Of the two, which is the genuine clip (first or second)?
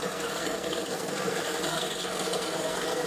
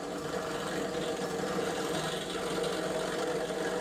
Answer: second